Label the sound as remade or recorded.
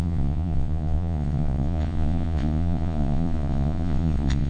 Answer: remade